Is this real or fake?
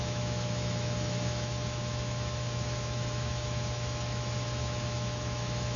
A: fake